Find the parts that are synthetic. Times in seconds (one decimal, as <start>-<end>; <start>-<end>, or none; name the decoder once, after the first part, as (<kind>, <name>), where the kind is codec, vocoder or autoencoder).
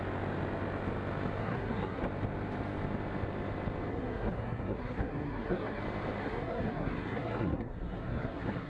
1.4-2.0 (codec, SNAC); 3.9-5.8; 6.2-8.7